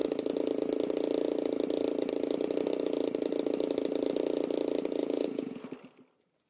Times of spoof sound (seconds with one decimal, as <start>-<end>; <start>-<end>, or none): 5.0-5.6